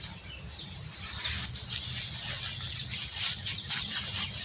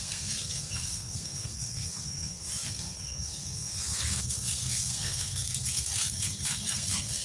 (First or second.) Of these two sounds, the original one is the first